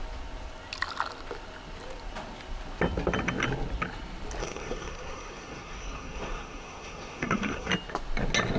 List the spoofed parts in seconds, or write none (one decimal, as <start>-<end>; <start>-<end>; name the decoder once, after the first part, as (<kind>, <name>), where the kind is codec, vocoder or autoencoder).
4.4-7.7 (codec, SNAC)